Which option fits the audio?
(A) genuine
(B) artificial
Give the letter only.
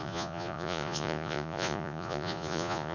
B